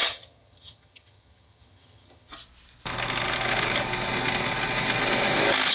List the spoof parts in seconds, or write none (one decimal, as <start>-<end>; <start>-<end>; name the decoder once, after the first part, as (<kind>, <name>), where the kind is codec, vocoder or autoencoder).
0.0-2.3 (vocoder, HiFi-GAN)